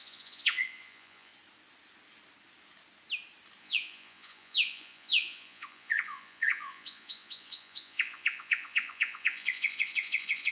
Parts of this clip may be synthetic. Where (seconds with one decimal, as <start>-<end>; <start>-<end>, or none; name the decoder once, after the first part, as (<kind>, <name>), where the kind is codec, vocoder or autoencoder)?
0.0-1.3 (vocoder, Vocos); 3.6-10.5